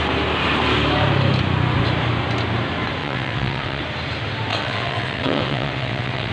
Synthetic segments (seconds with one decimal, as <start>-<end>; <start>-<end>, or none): 3.0-3.8; 4.5-6.3

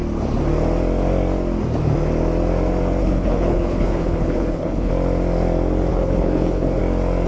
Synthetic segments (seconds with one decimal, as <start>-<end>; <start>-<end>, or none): 3.0-4.9; 5.9-6.8

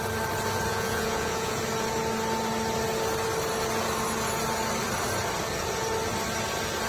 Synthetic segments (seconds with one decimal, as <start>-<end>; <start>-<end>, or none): 0.7-1.6

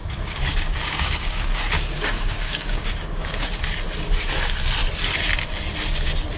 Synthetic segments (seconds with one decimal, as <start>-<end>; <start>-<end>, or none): 0.0-3.6

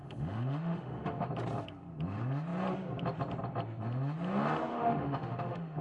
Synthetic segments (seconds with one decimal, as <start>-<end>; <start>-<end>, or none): 0.0-1.3; 4.7-5.8

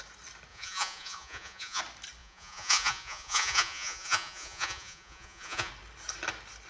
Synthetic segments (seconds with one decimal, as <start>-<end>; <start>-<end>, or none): 0.5-1.8; 2.2-5.7